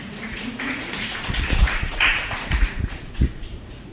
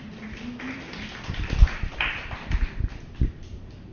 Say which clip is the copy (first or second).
first